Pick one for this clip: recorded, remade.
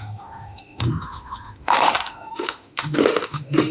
remade